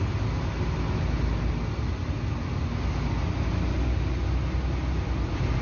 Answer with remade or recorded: recorded